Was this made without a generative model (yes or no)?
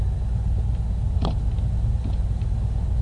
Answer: yes